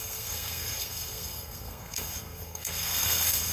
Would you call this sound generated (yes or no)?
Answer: yes